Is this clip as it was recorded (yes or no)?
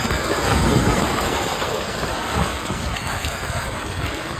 no